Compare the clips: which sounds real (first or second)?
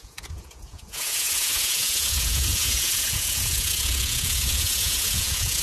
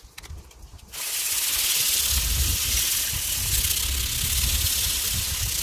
second